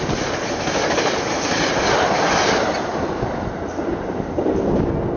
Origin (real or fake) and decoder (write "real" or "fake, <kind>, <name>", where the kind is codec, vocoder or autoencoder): real